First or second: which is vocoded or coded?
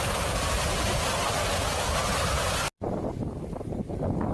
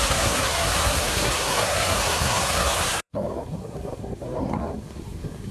second